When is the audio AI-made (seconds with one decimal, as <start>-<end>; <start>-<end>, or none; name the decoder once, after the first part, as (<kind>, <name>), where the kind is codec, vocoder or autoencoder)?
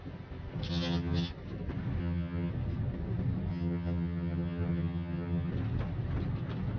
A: 0.7-1.3 (vocoder, HiFi-GAN); 2.0-2.5; 3.5-5.5